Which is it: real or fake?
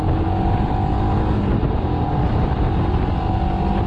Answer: real